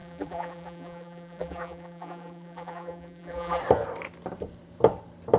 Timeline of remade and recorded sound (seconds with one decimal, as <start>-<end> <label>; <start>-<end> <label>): 0.0-3.6 remade; 3.6-5.4 recorded